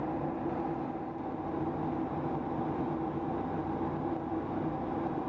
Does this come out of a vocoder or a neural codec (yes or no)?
no